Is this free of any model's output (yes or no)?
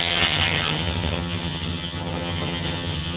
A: no